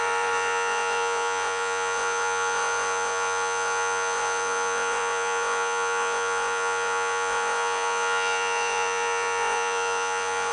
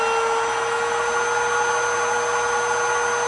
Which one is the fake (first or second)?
first